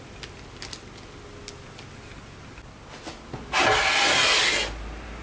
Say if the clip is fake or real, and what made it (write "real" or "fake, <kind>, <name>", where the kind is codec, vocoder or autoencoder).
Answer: real